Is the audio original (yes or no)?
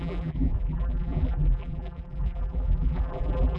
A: no